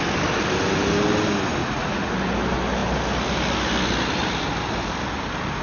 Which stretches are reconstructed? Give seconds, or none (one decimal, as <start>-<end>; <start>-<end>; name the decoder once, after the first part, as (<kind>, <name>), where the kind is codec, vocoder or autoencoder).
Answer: 1.6-2.1 (vocoder, Vocos)